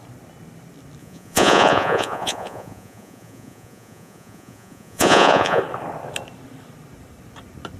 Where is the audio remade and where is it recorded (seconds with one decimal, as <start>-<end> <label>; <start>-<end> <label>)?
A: 0.0-1.0 recorded; 1.0-5.6 remade; 5.6-7.8 recorded